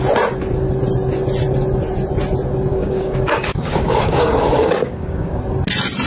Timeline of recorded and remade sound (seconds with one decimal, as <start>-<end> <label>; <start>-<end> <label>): 0.0-2.7 recorded; 2.7-5.4 remade; 5.4-6.1 recorded